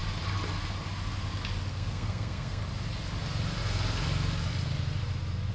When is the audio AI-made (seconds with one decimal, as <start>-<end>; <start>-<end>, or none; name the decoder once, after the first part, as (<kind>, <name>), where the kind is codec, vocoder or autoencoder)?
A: 1.7-2.6 (codec, SNAC)